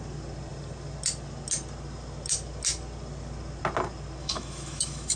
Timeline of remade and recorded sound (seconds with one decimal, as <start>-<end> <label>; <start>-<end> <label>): 0.0-4.2 recorded; 4.2-5.2 remade